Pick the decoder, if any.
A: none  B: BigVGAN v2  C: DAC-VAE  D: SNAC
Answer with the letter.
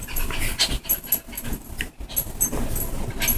A